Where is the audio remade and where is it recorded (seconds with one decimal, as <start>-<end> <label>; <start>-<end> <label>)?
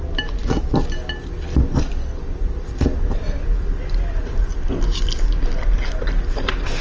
0.0-6.8 recorded